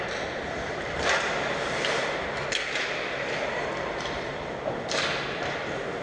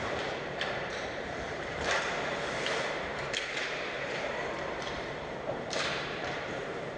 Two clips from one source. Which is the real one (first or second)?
first